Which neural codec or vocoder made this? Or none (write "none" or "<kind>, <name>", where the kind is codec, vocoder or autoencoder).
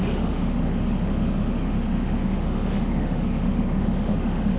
autoencoder, DAC-VAE